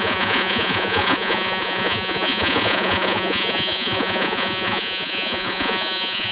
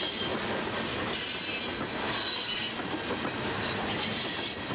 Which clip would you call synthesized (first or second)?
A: first